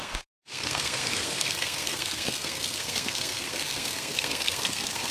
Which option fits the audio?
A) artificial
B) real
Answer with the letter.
A